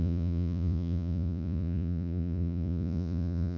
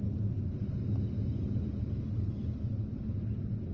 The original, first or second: second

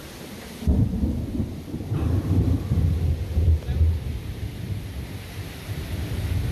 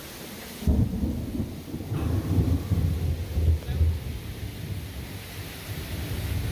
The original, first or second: second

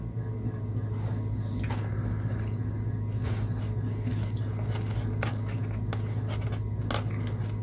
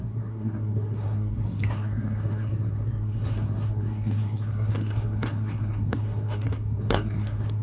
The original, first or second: first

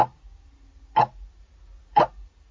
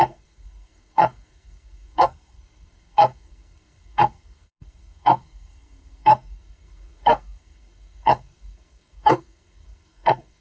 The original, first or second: first